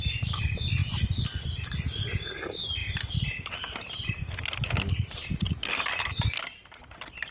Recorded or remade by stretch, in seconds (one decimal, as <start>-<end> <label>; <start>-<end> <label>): 0.0-7.3 recorded